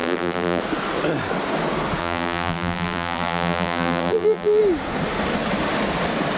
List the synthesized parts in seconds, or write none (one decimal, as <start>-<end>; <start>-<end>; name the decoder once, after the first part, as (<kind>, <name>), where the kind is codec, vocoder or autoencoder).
0.0-0.6 (vocoder, BigVGAN v2); 2.0-4.6

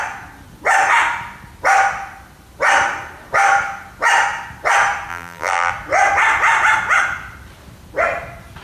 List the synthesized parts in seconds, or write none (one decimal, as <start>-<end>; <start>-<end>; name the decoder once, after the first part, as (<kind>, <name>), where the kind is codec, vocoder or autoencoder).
5.1-5.7 (vocoder, BigVGAN v2)

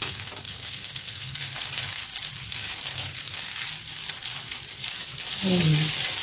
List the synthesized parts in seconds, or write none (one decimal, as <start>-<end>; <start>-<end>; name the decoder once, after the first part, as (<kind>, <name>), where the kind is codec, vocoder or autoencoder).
0.0-2.0 (codec, SNAC); 2.5-3.5

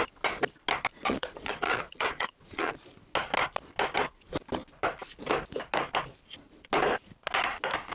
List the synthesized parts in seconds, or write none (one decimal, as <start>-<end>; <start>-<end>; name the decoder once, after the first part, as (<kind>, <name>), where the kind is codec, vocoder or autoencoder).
0.9-2.8 (vocoder, Vocos)

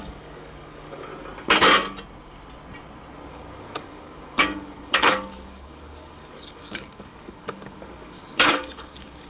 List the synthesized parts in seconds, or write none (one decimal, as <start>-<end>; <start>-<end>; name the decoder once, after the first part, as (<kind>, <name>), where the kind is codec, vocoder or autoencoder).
0.0-1.1 (codec, DAC); 3.3-9.3

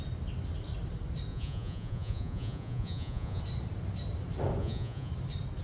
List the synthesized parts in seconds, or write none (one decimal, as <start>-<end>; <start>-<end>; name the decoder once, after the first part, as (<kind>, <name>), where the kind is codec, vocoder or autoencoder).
1.3-3.4 (vocoder, Vocos); 4.6-5.1

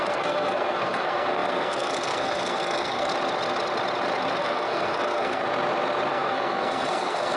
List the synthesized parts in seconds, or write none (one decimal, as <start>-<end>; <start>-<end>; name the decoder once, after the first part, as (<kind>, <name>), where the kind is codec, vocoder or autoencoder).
0.0-3.1 (codec, SNAC); 4.4-5.4; 6.1-7.4